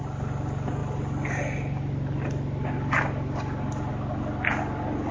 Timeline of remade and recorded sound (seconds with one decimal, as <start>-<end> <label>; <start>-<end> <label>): 0.0-5.1 recorded